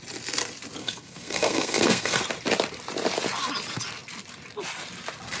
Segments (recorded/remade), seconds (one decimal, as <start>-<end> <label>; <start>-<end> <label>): 0.0-0.8 recorded; 0.8-2.2 remade; 2.2-5.4 recorded